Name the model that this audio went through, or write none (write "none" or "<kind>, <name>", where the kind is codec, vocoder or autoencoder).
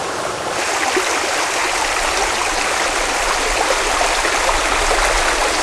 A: none